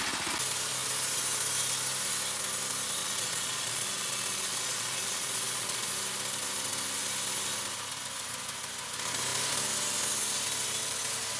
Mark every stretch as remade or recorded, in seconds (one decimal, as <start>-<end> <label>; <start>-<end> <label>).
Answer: 0.0-3.0 recorded; 3.0-5.9 remade; 5.9-11.4 recorded